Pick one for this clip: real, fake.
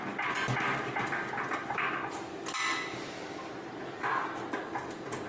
real